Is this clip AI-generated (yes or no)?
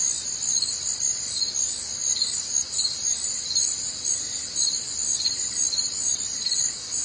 no